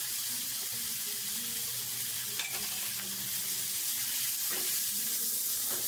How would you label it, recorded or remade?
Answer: recorded